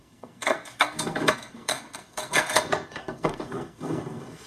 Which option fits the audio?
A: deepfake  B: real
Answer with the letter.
A